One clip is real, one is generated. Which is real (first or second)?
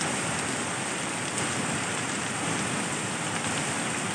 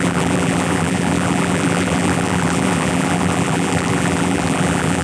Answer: first